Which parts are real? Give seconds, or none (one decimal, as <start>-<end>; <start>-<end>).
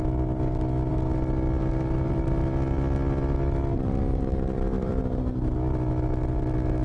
0.0-0.9; 5.0-6.8